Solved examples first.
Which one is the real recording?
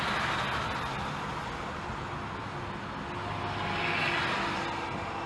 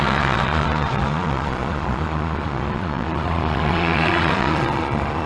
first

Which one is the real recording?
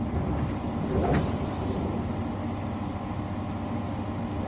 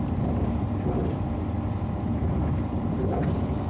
first